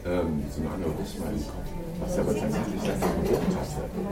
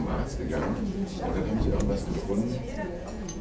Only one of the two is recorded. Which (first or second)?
first